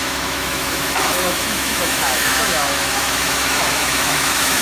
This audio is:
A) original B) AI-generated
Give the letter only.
B